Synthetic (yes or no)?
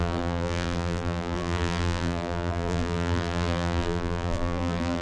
yes